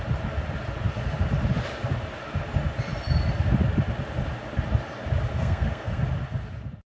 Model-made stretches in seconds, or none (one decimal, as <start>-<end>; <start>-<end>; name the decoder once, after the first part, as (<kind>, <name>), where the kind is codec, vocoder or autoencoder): 5.3-6.0 (codec, SNAC)